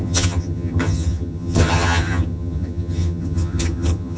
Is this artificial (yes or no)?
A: yes